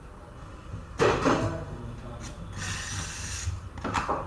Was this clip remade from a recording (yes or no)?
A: no